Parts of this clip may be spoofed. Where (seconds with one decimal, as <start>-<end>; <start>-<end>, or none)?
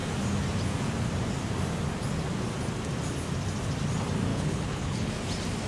4.3-5.1